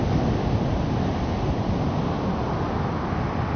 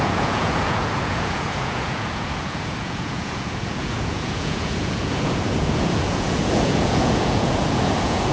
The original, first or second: first